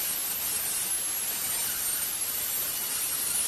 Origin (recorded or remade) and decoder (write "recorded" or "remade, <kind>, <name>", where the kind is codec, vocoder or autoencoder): recorded